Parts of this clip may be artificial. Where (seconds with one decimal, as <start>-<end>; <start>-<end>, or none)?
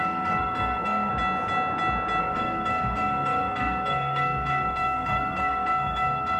0.0-1.1; 2.2-6.4